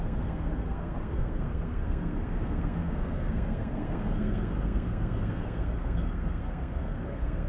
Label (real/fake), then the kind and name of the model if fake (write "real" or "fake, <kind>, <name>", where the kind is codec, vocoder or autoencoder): fake, codec, SNAC